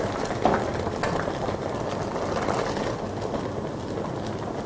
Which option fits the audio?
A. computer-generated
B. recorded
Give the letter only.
B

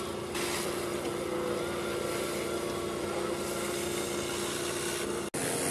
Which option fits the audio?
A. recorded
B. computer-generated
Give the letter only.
A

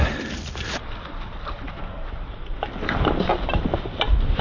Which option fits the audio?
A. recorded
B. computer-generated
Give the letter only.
A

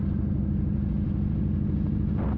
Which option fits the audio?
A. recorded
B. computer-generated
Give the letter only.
A